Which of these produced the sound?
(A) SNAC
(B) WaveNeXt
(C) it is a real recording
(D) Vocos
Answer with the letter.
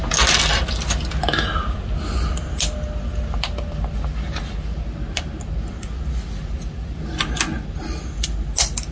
C